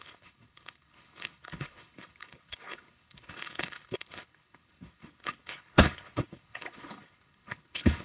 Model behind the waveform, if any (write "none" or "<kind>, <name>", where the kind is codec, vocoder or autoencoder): codec, HILCodec